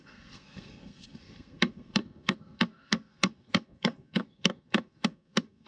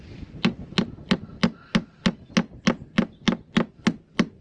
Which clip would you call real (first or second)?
second